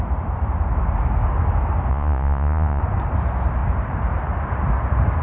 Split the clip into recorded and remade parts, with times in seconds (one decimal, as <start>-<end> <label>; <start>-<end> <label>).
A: 0.0-1.9 recorded; 1.9-2.8 remade; 2.8-5.2 recorded